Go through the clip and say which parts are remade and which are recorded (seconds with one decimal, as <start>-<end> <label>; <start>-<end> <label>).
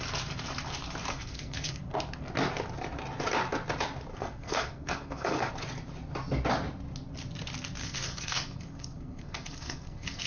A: 0.0-1.1 recorded; 1.1-1.8 remade; 1.8-4.1 recorded; 4.1-5.5 remade; 5.5-7.8 recorded; 7.8-10.3 remade